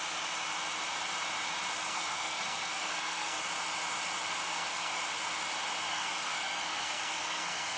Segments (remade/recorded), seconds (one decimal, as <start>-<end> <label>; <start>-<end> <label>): 0.0-1.8 recorded; 1.8-3.4 remade; 3.4-4.4 recorded; 4.4-5.0 remade; 5.0-5.9 recorded; 5.9-7.8 remade

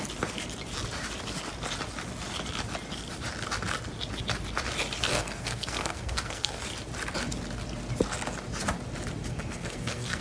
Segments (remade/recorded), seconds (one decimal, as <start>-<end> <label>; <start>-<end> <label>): 0.0-5.1 recorded; 5.1-6.6 remade; 6.6-9.3 recorded; 9.3-10.2 remade